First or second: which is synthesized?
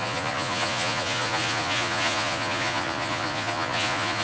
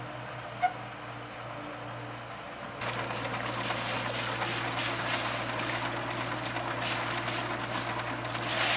first